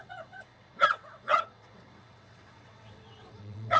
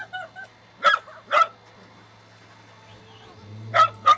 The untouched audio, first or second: second